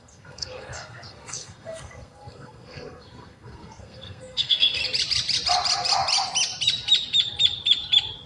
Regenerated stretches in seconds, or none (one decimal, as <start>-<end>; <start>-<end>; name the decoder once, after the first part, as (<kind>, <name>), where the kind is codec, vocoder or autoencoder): 0.0-4.8 (codec, SNAC)

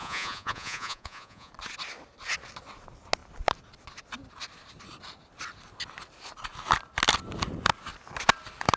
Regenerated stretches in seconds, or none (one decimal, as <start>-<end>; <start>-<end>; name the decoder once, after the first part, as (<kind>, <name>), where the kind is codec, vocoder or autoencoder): 0.0-1.5 (vocoder, Vocos)

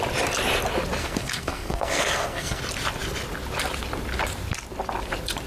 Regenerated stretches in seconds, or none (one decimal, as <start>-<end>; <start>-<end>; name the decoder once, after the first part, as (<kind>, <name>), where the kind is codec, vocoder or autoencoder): 1.0-2.6 (codec, SNAC)

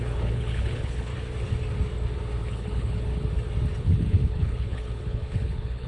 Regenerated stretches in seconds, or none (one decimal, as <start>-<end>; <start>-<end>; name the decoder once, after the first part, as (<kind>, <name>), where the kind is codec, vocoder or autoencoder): 0.0-1.1 (codec, HILCodec); 2.4-3.1; 3.8-5.9

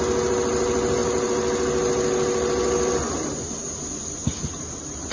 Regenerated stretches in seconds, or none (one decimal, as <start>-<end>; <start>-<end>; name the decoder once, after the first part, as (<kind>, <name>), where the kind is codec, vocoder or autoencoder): none